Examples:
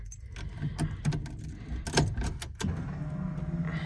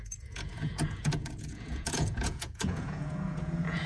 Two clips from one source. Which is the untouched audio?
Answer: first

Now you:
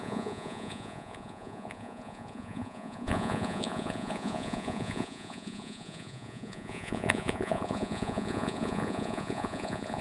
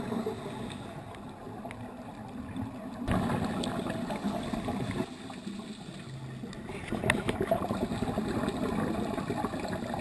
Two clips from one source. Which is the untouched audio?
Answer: second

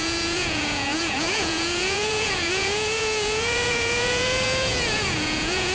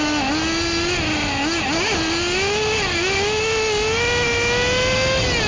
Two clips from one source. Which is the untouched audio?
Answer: second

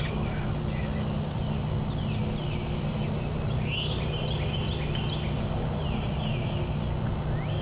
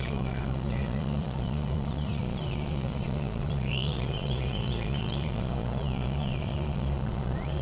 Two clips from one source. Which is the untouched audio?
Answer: first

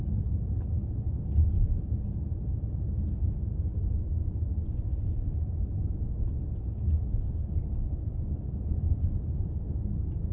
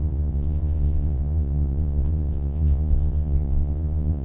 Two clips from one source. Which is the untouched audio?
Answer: first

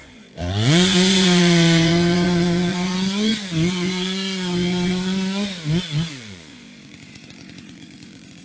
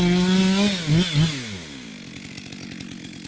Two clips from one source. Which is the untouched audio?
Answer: second